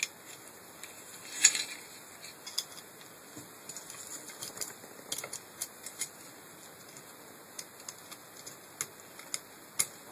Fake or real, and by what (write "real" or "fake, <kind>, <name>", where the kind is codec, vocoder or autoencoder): real